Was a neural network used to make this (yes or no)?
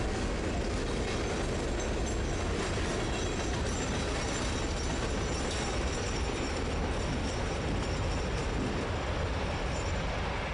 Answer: no